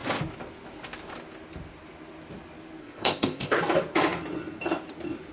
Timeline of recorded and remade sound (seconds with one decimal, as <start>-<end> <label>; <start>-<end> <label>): 0.0-2.8 recorded; 2.8-3.6 remade; 3.6-5.3 recorded